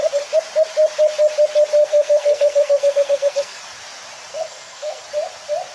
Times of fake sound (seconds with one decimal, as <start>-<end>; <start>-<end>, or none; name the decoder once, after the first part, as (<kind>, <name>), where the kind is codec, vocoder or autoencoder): 1.8-3.6 (codec, SNAC); 4.3-5.0